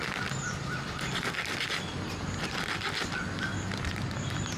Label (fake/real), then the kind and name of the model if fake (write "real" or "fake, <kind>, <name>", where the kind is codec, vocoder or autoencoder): real